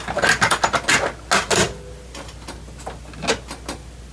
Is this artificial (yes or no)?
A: no